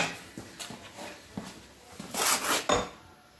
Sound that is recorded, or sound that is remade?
recorded